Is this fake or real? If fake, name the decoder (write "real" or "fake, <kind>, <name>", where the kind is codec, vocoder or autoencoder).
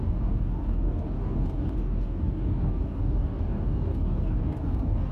fake, codec, DAC